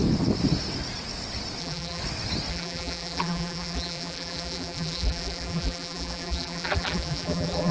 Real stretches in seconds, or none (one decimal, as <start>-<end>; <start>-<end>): 0.0-1.6; 2.0-2.5